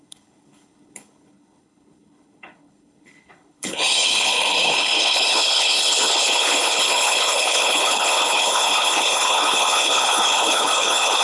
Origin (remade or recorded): remade